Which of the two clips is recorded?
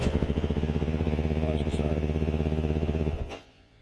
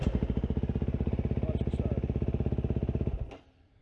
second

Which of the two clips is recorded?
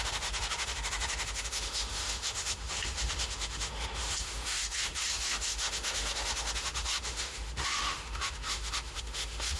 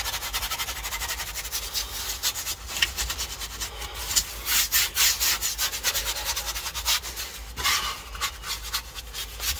second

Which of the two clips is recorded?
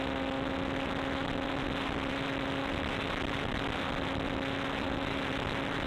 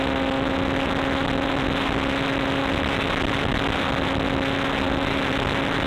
second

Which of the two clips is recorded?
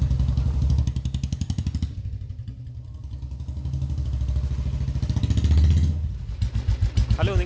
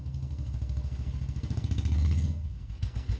first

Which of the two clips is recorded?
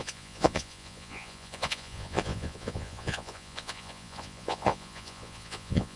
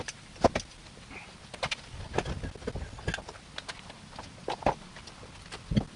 second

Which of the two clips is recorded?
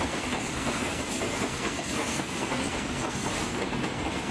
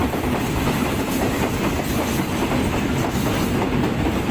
second